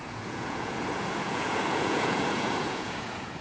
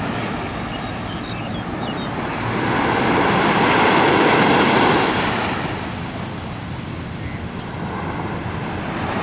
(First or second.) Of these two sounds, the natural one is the second